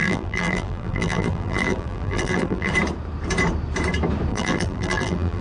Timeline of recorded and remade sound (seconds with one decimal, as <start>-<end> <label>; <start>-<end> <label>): 0.0-2.7 remade; 2.7-4.3 recorded; 4.3-5.4 remade